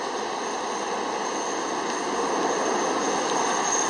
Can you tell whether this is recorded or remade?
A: recorded